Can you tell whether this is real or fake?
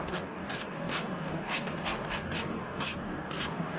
fake